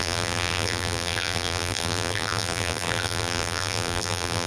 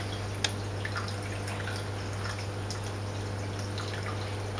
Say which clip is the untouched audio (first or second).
second